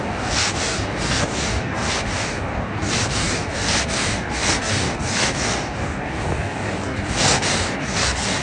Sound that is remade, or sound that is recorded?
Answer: remade